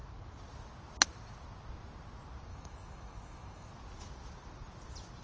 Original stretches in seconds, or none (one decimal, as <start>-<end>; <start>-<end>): 0.0-2.5; 3.7-5.2